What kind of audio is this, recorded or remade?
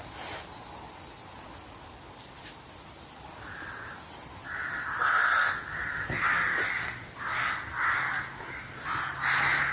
recorded